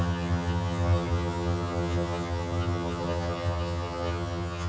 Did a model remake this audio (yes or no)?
yes